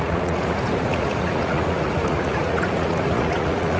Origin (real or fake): fake